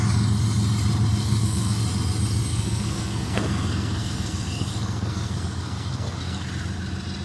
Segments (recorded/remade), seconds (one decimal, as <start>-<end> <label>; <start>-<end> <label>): 0.0-1.2 recorded; 1.2-1.8 remade; 1.8-2.5 recorded; 2.5-6.5 remade; 6.5-7.2 recorded